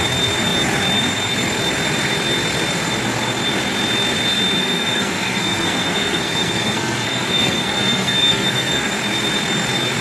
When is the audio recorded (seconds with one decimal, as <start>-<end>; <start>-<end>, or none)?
0.0-4.6; 8.9-10.0